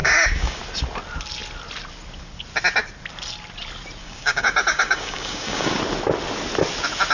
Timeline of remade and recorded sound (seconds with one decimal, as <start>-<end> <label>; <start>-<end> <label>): 0.0-0.6 remade; 0.6-4.0 recorded; 4.0-5.8 remade; 5.8-7.1 recorded